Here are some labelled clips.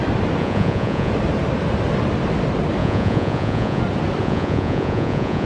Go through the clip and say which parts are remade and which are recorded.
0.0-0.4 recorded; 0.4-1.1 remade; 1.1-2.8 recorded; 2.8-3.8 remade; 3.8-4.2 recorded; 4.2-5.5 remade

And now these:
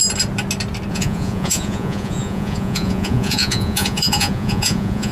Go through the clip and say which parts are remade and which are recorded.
0.0-0.9 recorded; 0.9-5.1 remade